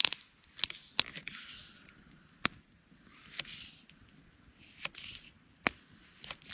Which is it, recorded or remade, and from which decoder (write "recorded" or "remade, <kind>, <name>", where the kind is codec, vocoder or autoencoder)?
recorded